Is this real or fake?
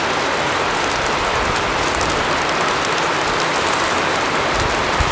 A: real